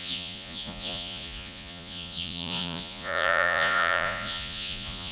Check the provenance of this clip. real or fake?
fake